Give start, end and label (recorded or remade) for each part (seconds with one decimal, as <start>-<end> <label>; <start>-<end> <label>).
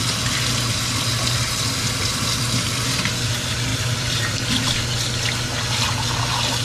0.0-3.7 recorded; 3.7-4.2 remade; 4.2-6.6 recorded